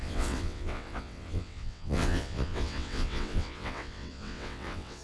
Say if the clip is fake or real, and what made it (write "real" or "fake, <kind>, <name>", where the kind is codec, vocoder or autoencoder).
fake, vocoder, WaveNeXt